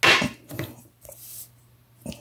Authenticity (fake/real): real